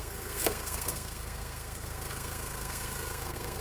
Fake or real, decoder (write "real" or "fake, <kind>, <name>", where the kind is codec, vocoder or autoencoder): fake, codec, SNAC